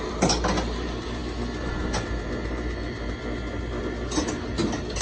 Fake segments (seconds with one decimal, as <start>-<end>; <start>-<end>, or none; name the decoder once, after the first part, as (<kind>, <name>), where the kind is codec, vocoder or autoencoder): none